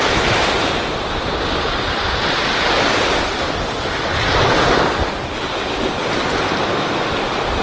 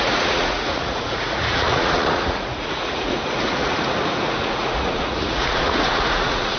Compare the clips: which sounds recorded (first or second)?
first